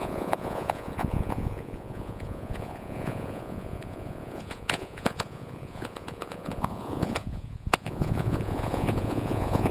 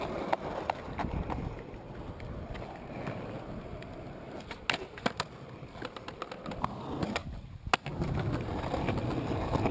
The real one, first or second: second